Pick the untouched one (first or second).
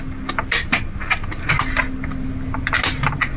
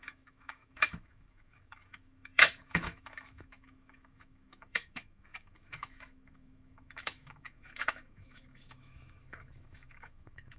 first